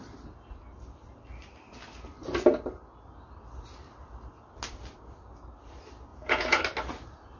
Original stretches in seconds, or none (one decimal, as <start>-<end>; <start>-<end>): 0.0-6.1; 6.6-7.4